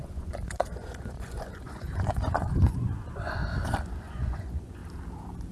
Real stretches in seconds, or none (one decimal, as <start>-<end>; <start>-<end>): 3.4-4.0; 4.8-5.5